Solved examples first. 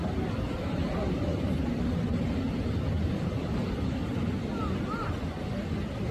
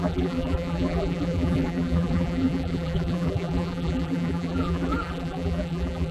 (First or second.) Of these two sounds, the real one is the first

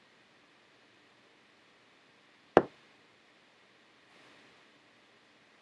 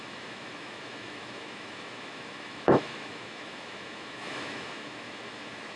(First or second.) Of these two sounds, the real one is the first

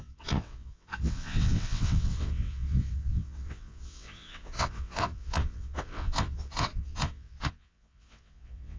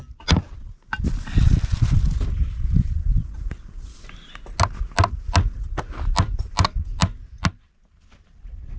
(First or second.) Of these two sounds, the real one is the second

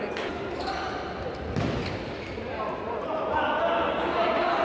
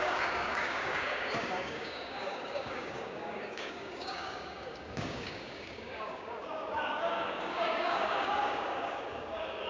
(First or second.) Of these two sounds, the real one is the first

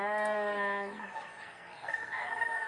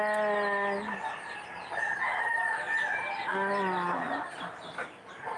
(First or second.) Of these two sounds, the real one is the second